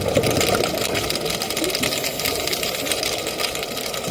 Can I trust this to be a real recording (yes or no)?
yes